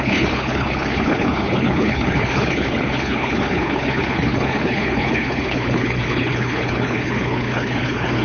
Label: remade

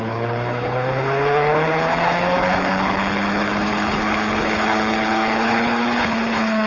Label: remade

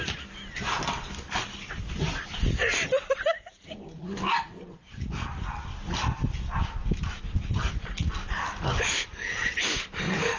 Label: recorded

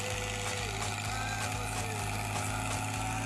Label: recorded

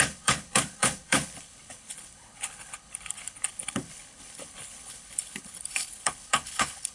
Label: remade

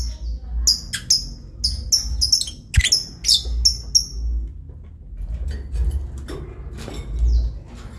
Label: recorded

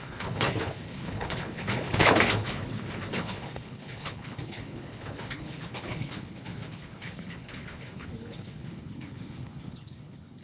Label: remade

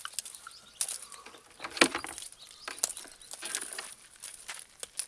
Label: recorded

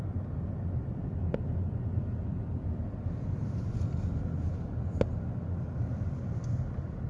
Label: recorded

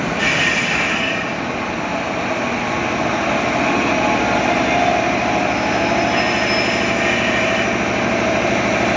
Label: recorded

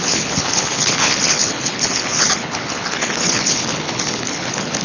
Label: remade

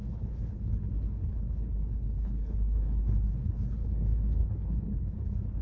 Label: remade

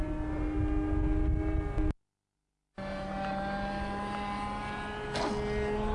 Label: recorded